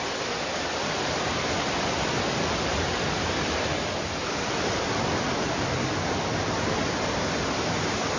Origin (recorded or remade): remade